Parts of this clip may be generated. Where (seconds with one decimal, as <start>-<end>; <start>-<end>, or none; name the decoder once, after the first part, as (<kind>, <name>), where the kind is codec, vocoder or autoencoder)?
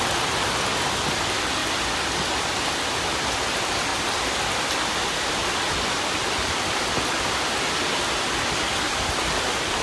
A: none